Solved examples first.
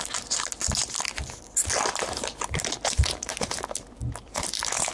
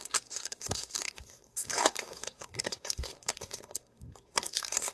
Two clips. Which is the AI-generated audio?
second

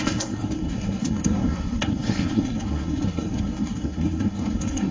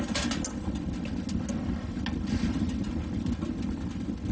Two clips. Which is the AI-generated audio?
first